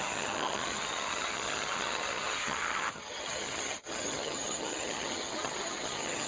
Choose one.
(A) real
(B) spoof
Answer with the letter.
B